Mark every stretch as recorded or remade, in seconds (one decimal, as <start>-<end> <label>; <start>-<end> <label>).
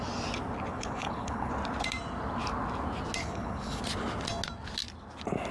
0.0-0.7 recorded; 0.7-1.5 remade; 1.5-3.2 recorded; 3.2-3.8 remade; 3.8-5.5 recorded